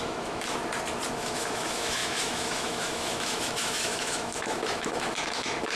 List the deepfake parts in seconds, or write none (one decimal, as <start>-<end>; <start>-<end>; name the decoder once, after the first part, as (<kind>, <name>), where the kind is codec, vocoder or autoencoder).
0.0-0.6 (autoencoder, DAC-VAE); 1.1-5.8